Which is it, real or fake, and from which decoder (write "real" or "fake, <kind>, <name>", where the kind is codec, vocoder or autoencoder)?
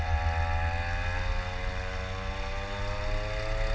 real